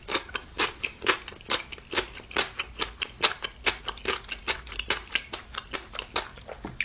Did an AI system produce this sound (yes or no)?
no